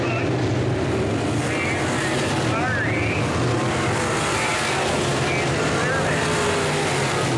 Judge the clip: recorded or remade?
recorded